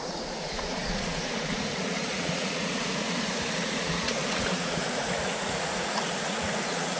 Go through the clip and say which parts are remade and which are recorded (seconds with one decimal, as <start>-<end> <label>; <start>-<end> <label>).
0.0-7.0 remade